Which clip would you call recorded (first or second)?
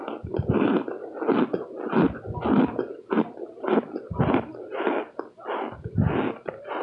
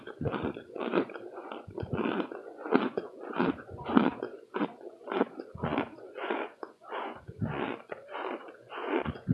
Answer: first